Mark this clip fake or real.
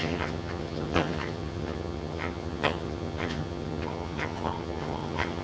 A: fake